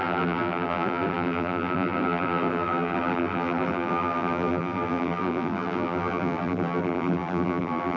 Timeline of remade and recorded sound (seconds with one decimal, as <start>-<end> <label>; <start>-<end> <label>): 0.0-8.0 remade